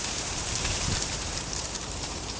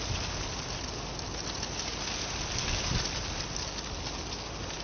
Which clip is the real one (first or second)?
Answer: second